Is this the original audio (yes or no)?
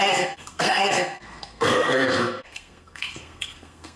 no